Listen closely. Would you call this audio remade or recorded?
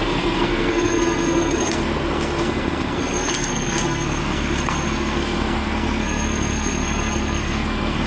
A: remade